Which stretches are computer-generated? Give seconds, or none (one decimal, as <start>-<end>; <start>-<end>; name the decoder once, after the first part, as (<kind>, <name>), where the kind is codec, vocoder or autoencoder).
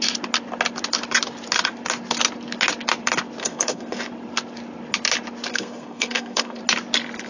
3.4-4.1 (codec, SNAC); 5.5-6.6